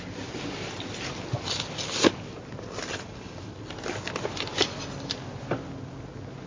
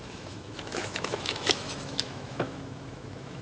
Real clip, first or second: first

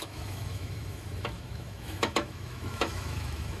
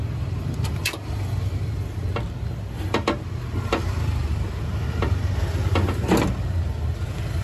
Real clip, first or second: second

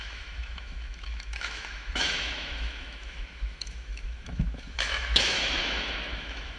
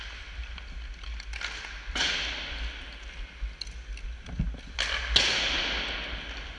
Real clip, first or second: second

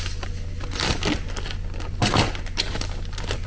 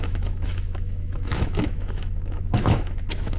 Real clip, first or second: first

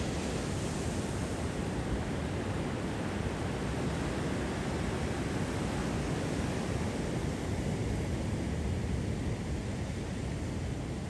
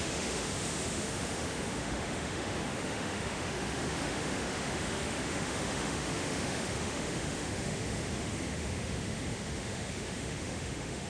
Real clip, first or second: first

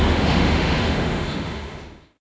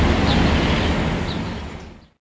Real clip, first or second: second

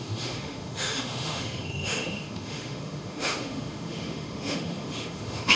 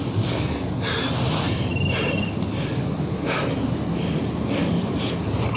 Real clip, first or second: second